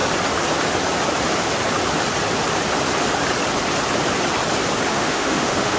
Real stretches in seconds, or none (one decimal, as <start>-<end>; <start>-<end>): 0.0-4.9